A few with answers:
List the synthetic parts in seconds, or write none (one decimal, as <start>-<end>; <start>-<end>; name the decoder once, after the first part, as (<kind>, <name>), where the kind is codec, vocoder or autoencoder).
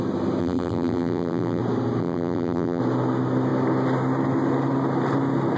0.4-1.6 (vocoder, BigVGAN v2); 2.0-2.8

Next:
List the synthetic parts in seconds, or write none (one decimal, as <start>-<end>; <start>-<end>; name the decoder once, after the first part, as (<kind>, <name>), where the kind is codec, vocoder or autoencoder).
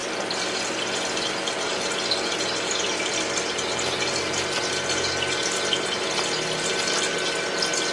0.0-0.7 (vocoder, BigVGAN v2)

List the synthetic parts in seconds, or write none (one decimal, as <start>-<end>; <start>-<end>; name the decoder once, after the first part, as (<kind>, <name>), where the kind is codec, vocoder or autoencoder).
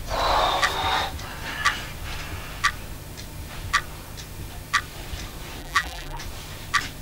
5.6-6.2 (vocoder, BigVGAN v2)